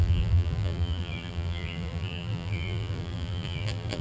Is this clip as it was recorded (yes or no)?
no